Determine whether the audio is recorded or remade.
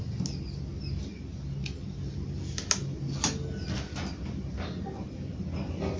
recorded